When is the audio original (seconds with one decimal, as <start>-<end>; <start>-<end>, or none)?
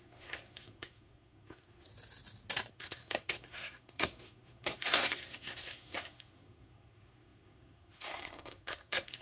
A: 1.9-2.7